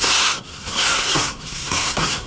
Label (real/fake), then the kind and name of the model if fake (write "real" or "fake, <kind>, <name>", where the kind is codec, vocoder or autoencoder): fake, codec, SNAC